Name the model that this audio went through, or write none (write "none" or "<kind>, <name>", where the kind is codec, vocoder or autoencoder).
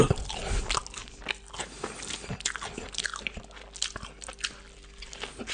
none